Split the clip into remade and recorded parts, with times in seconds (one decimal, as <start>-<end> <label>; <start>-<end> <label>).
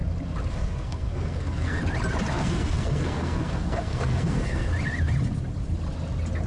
0.0-0.5 recorded; 0.5-1.8 remade; 1.8-2.3 recorded; 2.3-4.7 remade; 4.7-6.5 recorded